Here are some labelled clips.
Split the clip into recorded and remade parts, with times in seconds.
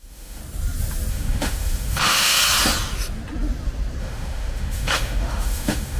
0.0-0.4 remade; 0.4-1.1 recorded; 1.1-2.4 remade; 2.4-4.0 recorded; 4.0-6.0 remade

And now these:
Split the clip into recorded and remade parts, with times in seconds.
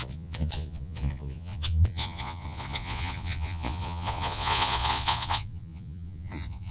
0.0-6.7 remade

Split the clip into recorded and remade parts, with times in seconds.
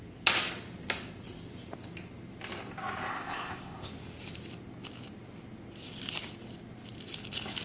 0.0-3.1 recorded; 3.1-3.9 remade; 3.9-7.6 recorded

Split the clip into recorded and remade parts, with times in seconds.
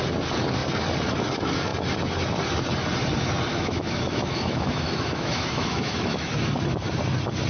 0.0-3.5 recorded; 3.5-6.3 remade; 6.3-7.5 recorded